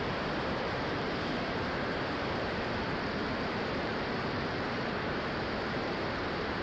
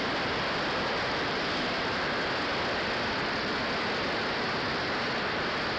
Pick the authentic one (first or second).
second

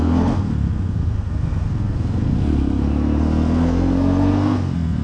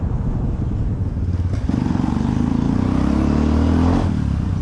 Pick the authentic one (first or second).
second